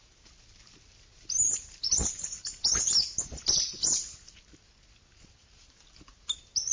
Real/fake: real